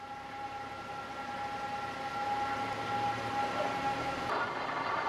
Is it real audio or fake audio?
real